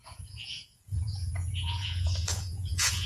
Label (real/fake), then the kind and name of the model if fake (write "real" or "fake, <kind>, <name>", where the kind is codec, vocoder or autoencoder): fake, vocoder, Vocos